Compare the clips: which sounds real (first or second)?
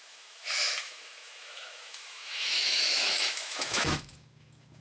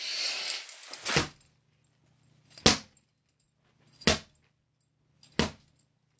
second